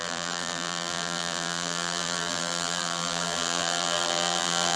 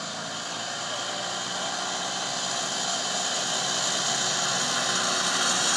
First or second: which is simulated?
first